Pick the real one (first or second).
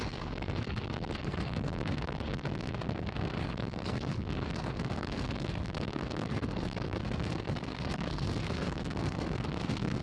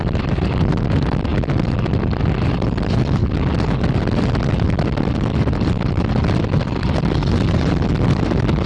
second